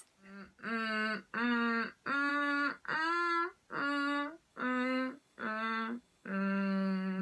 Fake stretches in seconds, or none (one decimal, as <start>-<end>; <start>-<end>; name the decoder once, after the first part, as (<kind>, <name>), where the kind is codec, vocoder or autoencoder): 2.3-2.8 (codec, DAC); 4.5-7.2